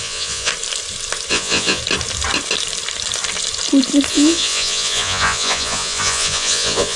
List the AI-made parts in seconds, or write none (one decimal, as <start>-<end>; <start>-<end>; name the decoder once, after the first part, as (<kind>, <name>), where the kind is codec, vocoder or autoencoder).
0.0-0.5 (vocoder, Vocos); 1.3-1.8; 4.1-7.0